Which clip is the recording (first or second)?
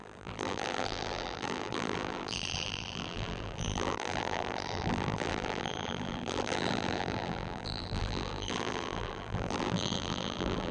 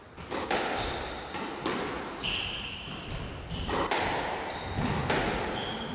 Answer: second